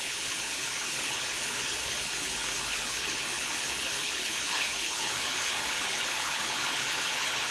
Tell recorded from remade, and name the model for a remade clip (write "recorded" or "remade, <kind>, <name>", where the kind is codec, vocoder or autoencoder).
remade, codec, HILCodec